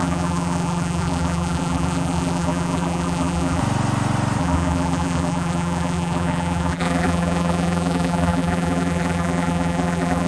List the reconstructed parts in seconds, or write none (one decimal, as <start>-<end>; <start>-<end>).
0.0-3.6; 4.4-10.3